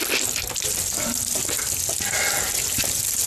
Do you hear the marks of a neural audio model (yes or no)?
no